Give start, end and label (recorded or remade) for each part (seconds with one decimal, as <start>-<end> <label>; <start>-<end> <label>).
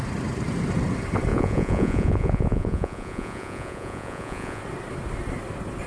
0.0-1.3 recorded; 1.3-4.6 remade; 4.6-5.9 recorded